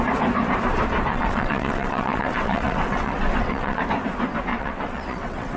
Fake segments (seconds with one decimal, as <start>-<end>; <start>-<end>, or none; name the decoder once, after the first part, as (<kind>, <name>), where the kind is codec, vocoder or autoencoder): 1.1-3.8 (vocoder, WaveNeXt); 4.5-5.6